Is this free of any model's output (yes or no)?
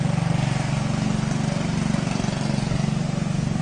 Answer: yes